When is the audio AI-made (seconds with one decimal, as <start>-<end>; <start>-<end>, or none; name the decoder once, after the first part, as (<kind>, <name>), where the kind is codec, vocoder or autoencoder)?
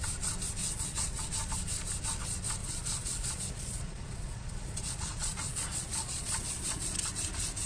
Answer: 0.6-1.2 (vocoder, Vocos); 2.6-7.1